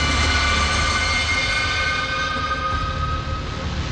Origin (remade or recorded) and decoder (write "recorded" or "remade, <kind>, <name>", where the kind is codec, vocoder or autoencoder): recorded